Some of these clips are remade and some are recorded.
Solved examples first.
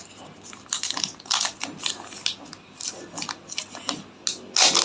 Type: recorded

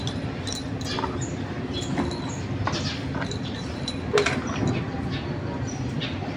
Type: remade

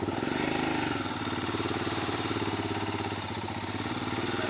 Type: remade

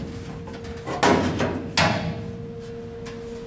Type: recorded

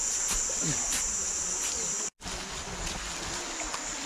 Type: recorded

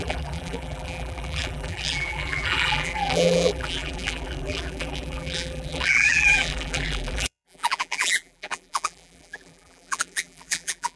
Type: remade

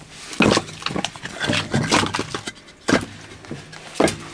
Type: recorded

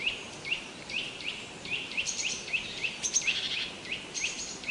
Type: remade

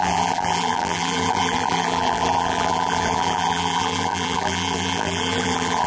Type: remade